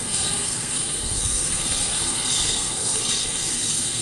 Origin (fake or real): fake